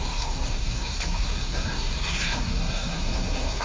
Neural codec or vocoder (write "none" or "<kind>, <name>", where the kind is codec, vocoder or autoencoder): codec, SNAC